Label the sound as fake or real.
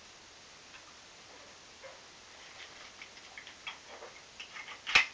real